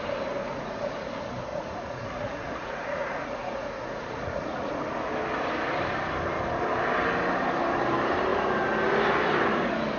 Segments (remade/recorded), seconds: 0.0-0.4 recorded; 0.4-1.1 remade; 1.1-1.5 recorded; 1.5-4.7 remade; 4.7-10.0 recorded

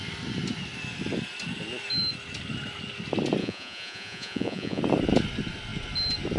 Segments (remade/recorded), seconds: 0.0-3.4 recorded; 3.4-4.8 remade; 4.8-6.4 recorded

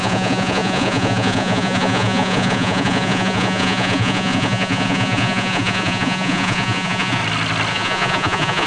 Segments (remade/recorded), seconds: 0.0-7.2 remade; 7.2-7.7 recorded; 7.7-8.7 remade